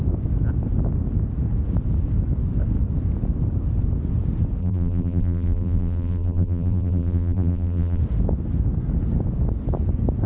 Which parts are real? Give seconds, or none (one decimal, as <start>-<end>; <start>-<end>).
0.0-4.6; 8.0-10.3